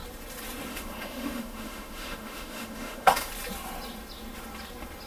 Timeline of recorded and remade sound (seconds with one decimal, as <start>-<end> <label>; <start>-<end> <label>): 0.0-0.7 recorded; 0.7-3.3 remade; 3.3-5.1 recorded